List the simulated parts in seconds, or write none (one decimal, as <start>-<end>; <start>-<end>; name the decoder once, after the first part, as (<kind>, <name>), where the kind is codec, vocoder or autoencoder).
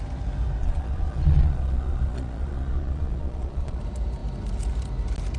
0.6-3.8 (vocoder, Vocos)